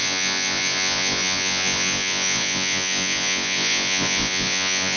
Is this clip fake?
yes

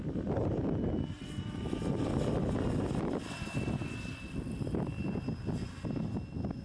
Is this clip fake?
no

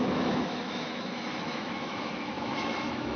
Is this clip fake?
yes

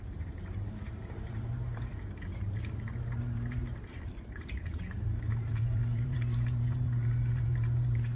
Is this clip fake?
yes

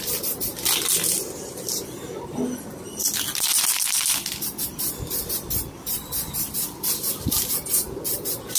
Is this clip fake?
yes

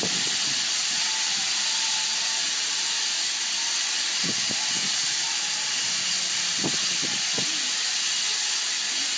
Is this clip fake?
no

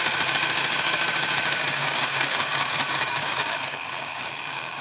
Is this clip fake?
yes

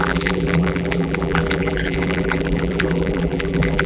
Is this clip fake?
yes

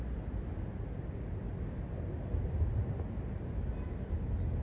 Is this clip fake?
no